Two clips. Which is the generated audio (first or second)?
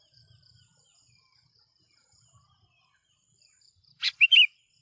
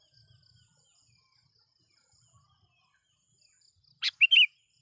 first